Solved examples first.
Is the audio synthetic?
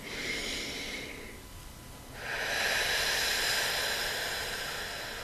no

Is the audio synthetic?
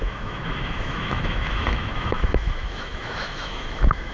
yes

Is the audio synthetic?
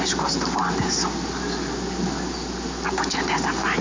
no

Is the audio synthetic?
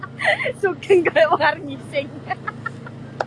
no